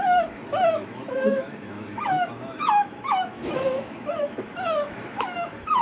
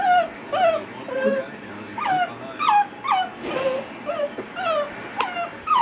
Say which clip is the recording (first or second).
second